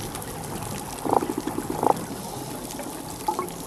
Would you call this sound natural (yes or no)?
yes